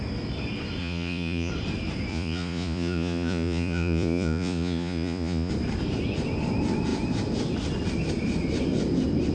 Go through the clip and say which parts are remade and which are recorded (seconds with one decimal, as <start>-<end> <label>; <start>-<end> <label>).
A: 0.0-0.8 recorded; 0.8-1.5 remade; 1.5-2.1 recorded; 2.1-5.5 remade; 5.5-9.3 recorded